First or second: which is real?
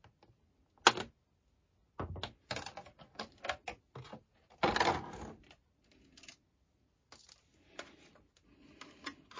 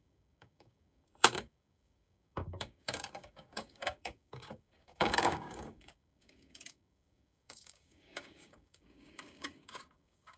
first